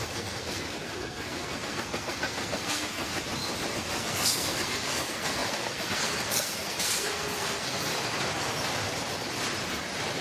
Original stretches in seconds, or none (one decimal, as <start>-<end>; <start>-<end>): 3.1-3.7; 7.9-10.2